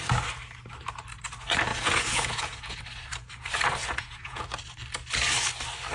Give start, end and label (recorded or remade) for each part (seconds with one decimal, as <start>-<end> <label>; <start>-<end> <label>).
0.0-1.7 recorded; 1.7-2.8 remade; 2.8-3.8 recorded; 3.8-4.4 remade; 4.4-5.9 recorded